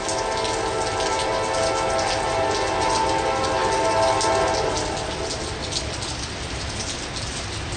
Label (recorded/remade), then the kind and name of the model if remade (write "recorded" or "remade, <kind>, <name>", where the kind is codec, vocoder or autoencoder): recorded